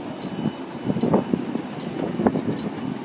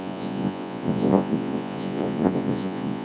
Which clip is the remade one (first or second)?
second